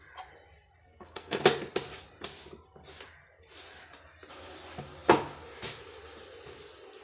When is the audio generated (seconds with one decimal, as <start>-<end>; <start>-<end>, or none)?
0.8-1.4